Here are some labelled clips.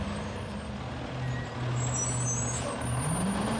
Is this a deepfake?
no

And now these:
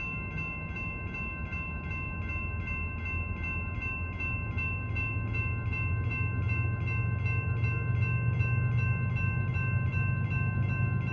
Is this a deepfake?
no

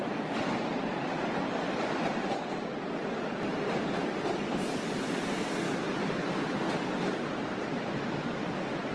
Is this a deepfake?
no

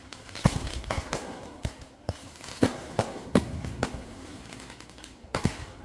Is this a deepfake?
yes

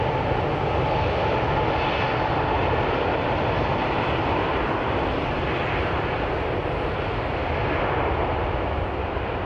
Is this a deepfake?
no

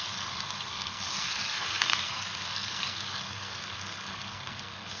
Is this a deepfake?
yes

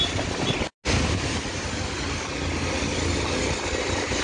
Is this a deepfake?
no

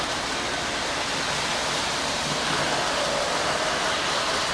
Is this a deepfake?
no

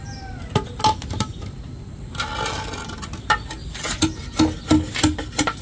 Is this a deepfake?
no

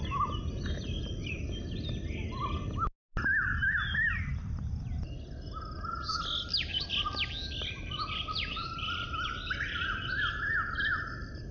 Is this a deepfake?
no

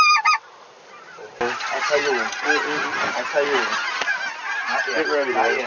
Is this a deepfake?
no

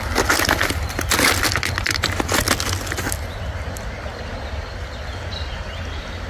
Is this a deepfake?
no